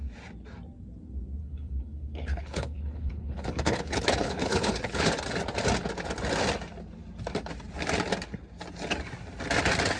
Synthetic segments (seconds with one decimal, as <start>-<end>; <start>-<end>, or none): 1.4-5.1